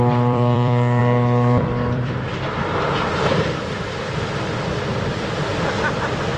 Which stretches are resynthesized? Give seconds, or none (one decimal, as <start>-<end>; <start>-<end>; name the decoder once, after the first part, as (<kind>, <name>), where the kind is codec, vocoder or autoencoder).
0.0-6.4 (vocoder, BigVGAN v2)